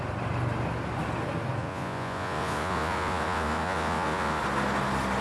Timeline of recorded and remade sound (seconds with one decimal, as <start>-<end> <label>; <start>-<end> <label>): 0.0-1.6 recorded; 1.6-4.4 remade; 4.4-5.2 recorded